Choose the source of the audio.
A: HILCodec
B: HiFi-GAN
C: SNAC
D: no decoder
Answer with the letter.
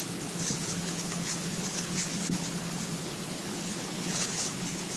A